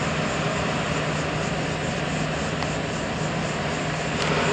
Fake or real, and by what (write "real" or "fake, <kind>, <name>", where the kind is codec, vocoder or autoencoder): real